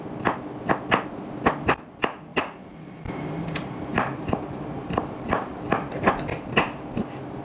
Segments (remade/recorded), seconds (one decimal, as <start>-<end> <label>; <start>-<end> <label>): 0.0-2.3 recorded; 2.3-6.1 remade; 6.1-7.4 recorded